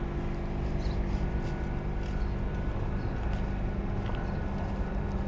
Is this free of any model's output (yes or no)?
yes